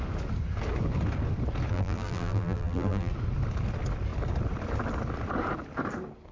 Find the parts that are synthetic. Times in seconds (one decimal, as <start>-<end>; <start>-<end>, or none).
1.7-3.1